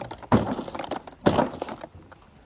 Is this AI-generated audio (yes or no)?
no